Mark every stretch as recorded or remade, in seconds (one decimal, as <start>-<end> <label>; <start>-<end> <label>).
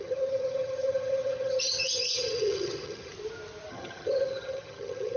0.0-3.1 remade; 3.1-3.7 recorded; 3.7-5.2 remade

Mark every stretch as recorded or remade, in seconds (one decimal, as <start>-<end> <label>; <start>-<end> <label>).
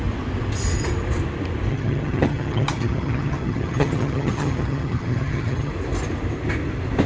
0.0-1.7 recorded; 1.7-5.7 remade; 5.7-7.1 recorded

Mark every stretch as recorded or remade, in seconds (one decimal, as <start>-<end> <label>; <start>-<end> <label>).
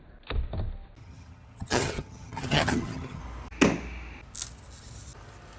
0.0-1.0 recorded; 1.0-3.2 remade; 3.2-5.6 recorded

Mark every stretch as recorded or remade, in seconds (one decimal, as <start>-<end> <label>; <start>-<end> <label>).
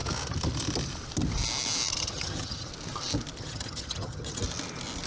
0.0-1.9 recorded; 1.9-2.7 remade; 2.7-3.4 recorded; 3.4-4.4 remade; 4.4-5.1 recorded